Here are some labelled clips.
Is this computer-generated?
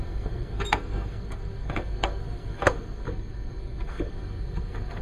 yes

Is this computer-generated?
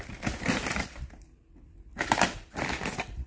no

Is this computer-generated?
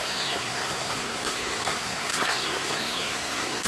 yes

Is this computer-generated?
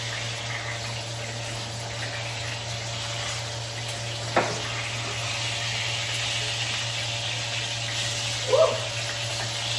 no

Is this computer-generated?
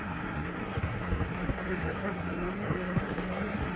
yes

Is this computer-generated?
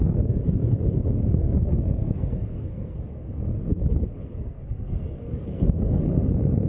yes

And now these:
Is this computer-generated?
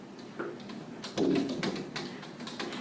no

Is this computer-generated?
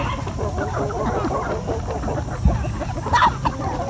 no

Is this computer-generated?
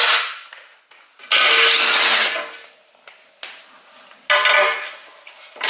no